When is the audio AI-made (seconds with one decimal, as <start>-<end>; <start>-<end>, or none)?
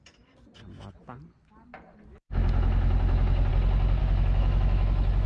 2.1-3.5; 4.0-5.3